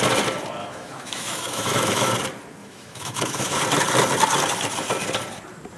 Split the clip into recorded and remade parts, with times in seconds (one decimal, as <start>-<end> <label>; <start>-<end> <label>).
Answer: 0.0-0.6 recorded; 0.6-2.1 remade; 2.1-2.6 recorded; 2.6-3.6 remade; 3.6-5.8 recorded